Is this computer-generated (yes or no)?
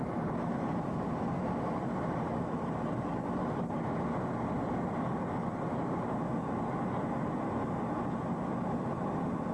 no